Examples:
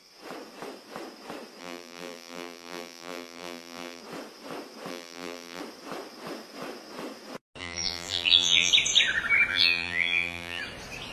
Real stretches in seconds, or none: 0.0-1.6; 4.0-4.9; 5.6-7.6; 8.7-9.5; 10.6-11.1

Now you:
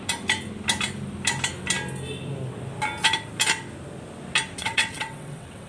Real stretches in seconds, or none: 0.0-4.6

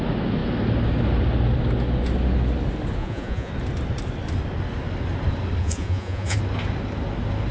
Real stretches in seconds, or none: 0.0-3.0; 3.5-5.6; 6.4-7.5

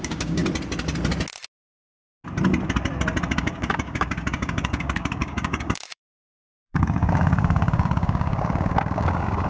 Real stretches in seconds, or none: 0.4-3.3

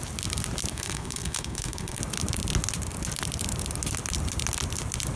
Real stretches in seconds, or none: 0.0-0.7; 2.0-5.2

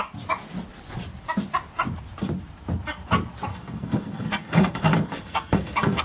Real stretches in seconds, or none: 0.0-3.5